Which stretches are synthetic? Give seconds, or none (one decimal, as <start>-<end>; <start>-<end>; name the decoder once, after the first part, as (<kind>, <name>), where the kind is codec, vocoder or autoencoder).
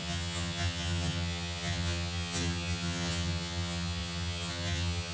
0.0-5.1 (vocoder, HiFi-GAN)